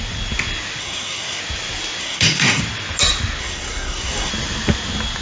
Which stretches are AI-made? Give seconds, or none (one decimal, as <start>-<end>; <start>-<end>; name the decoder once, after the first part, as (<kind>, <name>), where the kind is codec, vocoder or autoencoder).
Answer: 0.8-1.4 (codec, SNAC); 2.0-2.6; 3.4-4.3